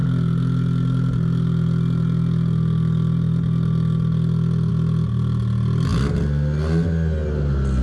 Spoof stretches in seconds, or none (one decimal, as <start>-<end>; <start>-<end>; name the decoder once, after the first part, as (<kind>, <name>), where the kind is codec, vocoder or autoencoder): none

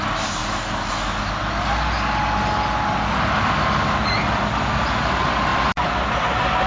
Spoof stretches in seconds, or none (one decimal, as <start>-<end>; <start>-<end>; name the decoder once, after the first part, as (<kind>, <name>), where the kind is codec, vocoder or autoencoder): none